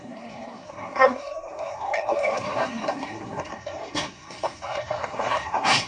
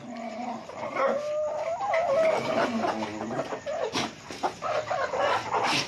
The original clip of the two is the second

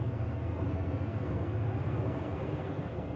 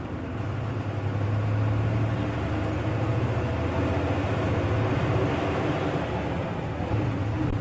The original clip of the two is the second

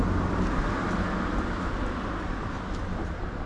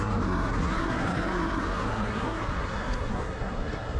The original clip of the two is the first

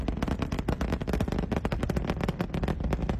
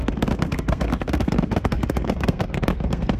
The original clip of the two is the first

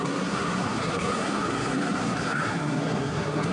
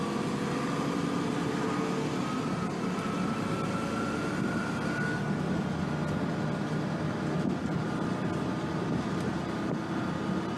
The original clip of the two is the second